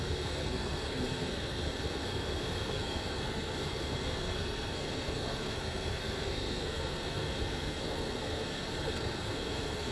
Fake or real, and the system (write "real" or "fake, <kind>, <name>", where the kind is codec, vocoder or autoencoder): fake, codec, SNAC